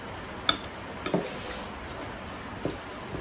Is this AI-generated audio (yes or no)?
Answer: no